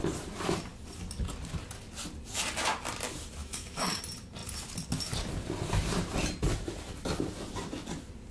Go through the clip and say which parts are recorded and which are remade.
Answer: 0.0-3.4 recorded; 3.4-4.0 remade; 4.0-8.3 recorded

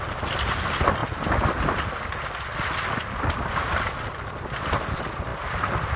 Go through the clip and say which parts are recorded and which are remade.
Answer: 0.0-6.0 recorded

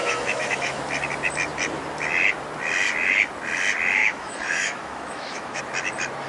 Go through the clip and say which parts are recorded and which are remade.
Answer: 0.0-0.8 remade; 0.8-4.0 recorded; 4.0-5.6 remade; 5.6-6.3 recorded